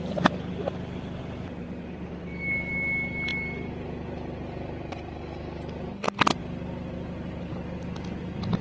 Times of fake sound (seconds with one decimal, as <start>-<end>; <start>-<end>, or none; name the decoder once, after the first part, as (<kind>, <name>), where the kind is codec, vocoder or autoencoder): none